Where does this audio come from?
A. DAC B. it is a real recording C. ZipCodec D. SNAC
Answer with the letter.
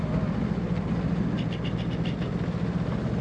B